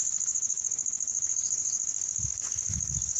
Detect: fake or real fake